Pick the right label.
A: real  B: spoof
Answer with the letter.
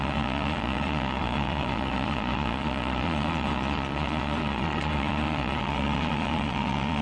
B